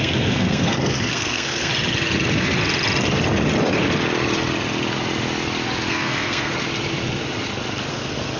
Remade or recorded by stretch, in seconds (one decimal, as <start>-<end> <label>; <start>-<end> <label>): 0.0-1.7 remade; 1.7-5.9 recorded; 5.9-6.5 remade; 6.5-7.9 recorded; 7.9-8.4 remade